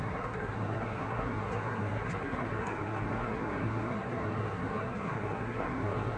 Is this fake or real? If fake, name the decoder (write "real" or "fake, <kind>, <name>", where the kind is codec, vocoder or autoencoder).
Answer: fake, codec, SNAC